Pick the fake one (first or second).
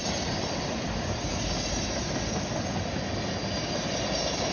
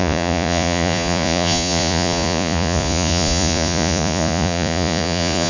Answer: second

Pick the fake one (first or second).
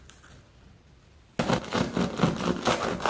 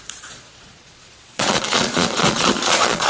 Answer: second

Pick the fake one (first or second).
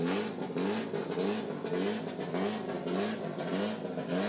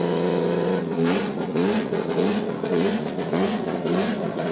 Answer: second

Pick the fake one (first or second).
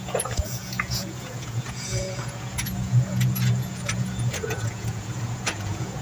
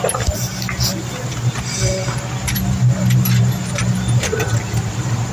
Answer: first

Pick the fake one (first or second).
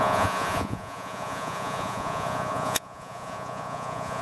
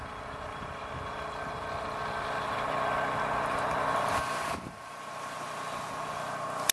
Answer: first